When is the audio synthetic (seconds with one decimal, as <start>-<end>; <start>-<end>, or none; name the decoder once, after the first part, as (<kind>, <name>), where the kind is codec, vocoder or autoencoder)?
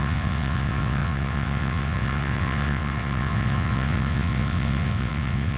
0.0-5.6 (vocoder, WaveNeXt)